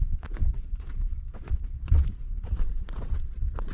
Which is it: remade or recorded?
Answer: remade